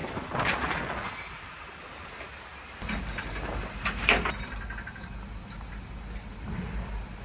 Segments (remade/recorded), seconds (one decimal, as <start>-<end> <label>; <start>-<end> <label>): 0.0-7.2 recorded